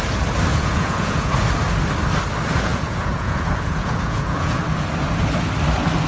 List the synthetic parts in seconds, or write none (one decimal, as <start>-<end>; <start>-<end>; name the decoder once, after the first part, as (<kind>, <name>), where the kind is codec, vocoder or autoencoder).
0.5-1.3 (vocoder, Vocos); 2.7-4.6